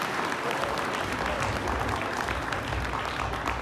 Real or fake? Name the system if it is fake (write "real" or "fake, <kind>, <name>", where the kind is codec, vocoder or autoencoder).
real